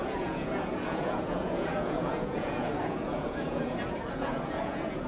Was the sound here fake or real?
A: fake